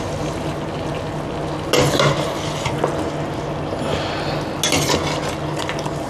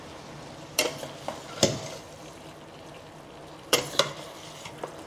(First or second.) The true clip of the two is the first